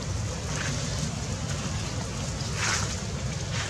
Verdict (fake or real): real